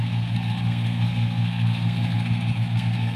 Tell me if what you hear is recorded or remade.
remade